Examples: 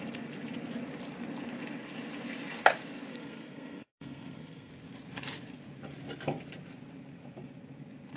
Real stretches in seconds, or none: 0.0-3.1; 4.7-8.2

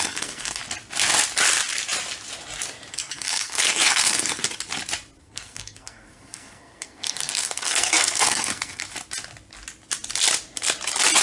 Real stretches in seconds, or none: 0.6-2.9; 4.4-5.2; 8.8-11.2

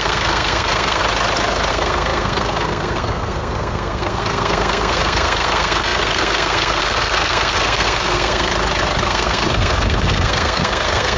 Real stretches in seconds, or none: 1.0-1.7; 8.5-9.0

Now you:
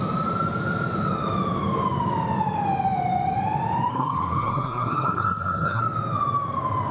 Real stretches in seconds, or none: 0.0-3.9; 5.8-6.9